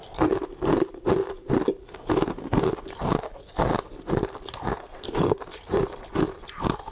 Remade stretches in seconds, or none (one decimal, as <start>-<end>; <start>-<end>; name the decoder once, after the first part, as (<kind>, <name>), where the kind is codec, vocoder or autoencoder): 4.8-5.4 (codec, SNAC)

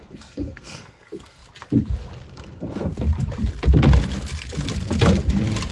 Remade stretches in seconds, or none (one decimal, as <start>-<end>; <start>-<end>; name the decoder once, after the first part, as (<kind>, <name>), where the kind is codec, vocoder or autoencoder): 0.0-1.4 (codec, SNAC); 2.3-2.9

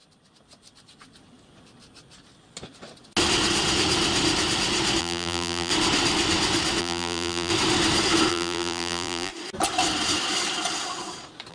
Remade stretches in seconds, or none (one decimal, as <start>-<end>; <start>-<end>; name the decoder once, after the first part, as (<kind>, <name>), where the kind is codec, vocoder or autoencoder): 5.0-5.7 (vocoder, BigVGAN v2); 6.8-7.5; 8.3-9.3

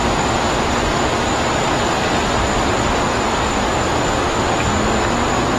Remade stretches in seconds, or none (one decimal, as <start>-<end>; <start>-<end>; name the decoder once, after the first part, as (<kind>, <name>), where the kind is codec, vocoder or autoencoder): none